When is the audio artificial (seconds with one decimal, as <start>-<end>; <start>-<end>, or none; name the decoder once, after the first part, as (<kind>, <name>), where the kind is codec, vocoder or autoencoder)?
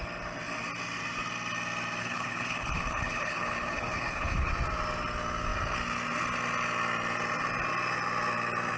2.0-4.5 (codec, HILCodec)